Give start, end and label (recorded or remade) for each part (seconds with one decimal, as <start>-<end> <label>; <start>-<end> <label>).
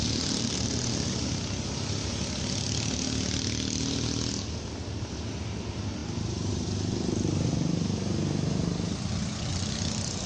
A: 0.0-10.3 recorded